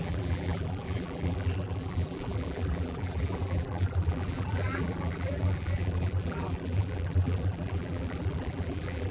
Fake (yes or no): yes